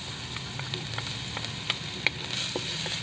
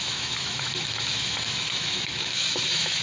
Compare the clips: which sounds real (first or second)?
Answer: first